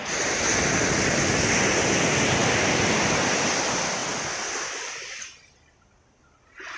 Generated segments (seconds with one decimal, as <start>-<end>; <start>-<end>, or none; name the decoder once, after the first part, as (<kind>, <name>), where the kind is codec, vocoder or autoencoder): none